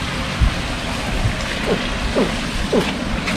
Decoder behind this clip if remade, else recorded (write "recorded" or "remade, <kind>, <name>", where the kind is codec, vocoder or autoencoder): recorded